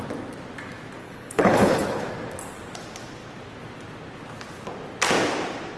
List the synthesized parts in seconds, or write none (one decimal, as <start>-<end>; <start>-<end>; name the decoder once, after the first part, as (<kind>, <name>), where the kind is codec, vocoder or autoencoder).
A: 1.0-2.1 (codec, HILCodec)